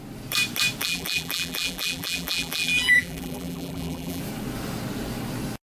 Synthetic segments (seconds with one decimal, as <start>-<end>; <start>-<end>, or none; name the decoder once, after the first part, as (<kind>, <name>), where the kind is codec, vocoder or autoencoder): 0.8-4.2 (vocoder, BigVGAN v2)